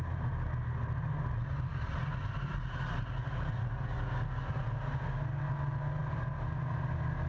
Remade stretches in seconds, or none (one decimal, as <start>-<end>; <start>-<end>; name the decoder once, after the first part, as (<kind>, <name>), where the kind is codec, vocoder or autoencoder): none